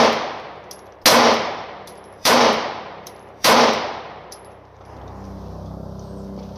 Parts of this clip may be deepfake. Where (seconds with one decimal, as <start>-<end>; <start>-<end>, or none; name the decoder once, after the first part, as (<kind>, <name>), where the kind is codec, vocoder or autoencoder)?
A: 1.1-5.0 (vocoder, BigVGAN v2)